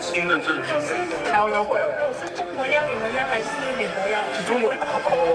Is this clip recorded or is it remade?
remade